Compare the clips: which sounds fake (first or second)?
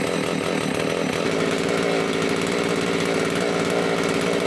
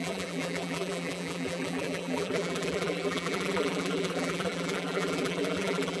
second